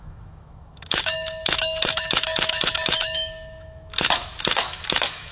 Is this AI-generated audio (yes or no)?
yes